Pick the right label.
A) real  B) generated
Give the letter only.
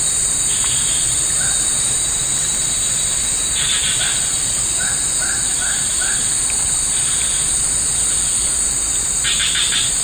A